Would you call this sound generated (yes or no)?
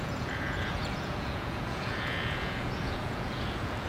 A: yes